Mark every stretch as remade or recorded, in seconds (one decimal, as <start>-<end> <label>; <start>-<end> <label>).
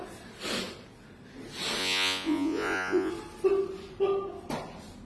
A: 0.0-1.8 recorded; 1.8-3.1 remade; 3.1-5.1 recorded